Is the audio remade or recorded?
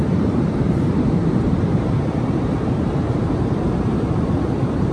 remade